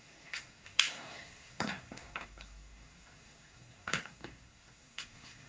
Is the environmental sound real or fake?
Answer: fake